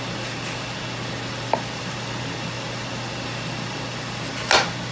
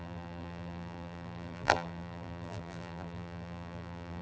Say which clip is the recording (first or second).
first